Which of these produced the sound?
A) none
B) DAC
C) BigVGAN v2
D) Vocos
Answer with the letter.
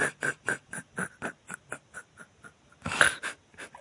A